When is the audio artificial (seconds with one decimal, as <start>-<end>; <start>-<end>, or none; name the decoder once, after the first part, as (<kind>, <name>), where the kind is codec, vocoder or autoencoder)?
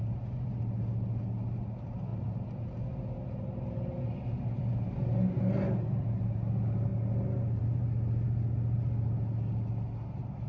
none